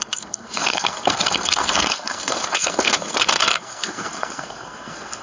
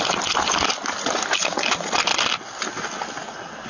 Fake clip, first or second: first